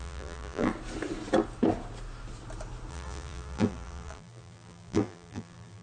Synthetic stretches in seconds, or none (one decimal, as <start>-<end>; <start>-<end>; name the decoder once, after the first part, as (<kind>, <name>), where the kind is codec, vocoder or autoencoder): 0.0-0.7 (vocoder, BigVGAN v2); 2.9-5.8